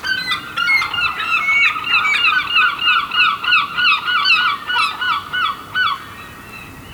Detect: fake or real real